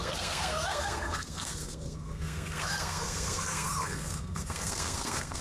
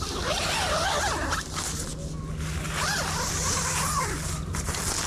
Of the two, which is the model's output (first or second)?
first